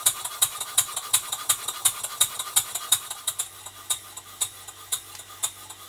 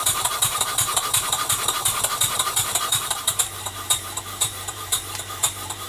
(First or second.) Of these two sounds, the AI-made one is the second